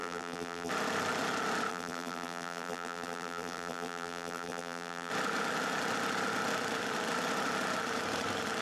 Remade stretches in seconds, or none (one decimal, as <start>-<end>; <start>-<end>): 0.0-0.7; 1.7-5.1